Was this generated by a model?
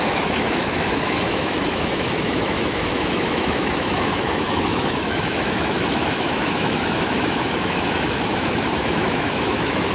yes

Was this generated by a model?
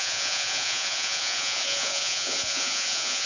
yes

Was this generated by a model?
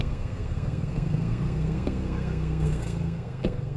yes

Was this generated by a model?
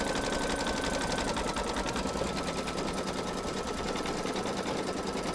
no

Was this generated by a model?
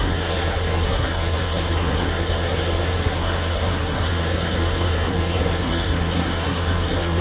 yes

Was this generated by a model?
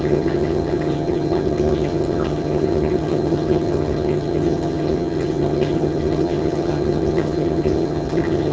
yes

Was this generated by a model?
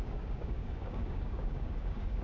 yes